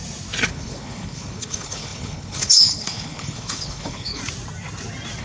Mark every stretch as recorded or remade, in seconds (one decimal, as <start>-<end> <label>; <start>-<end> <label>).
0.0-0.5 recorded; 0.5-4.2 remade; 4.2-5.2 recorded